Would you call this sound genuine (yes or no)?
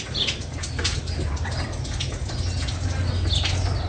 yes